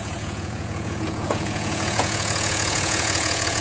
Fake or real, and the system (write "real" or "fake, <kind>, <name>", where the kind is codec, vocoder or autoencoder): fake, vocoder, Vocos